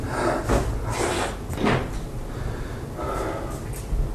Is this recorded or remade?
recorded